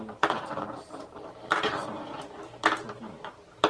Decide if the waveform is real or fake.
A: fake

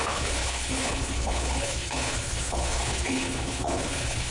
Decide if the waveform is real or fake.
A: fake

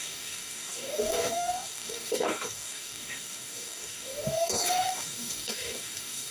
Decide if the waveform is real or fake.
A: fake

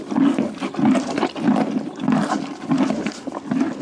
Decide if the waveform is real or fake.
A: real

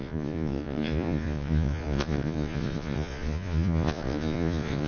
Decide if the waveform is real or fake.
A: fake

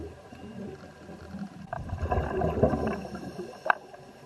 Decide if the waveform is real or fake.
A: real